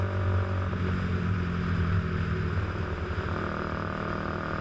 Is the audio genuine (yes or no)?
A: yes